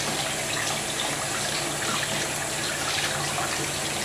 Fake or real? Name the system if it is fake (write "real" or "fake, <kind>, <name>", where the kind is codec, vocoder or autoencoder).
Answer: real